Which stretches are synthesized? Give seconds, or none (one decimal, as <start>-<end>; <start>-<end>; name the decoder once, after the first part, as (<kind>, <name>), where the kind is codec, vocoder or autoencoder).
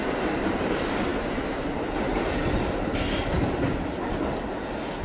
none